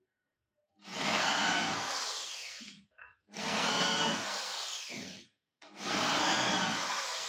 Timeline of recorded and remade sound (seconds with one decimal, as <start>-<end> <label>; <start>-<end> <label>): 0.0-7.3 remade